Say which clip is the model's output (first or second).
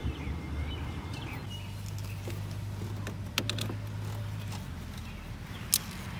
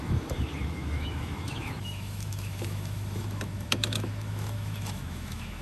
second